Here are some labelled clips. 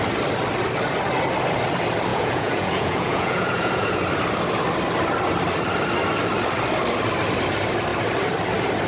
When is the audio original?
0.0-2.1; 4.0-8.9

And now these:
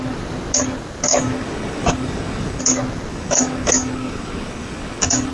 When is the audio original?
0.0-1.1; 2.6-3.1

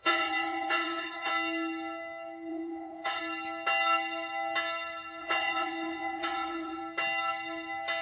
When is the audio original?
1.3-2.5; 3.2-5.2; 6.8-8.0

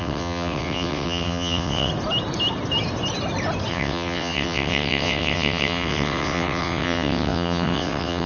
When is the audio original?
1.9-3.7